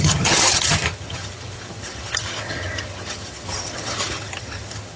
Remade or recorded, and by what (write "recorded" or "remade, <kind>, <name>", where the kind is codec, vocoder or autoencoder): remade, vocoder, HiFi-GAN